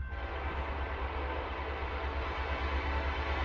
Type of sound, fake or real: real